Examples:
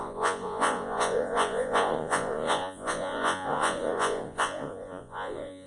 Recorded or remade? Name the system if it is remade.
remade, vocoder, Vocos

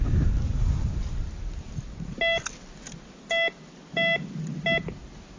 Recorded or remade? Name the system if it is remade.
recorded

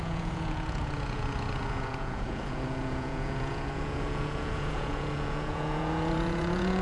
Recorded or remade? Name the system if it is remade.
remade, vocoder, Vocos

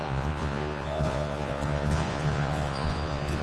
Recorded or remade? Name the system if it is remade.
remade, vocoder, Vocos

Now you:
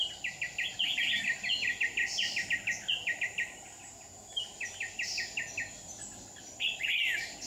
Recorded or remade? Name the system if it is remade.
recorded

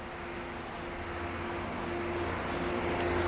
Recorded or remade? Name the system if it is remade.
recorded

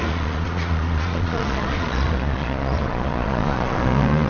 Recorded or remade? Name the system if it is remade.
remade, vocoder, Vocos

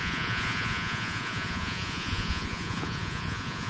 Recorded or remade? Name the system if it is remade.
remade, vocoder, Vocos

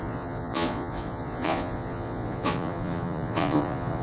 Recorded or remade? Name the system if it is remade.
remade, vocoder, Vocos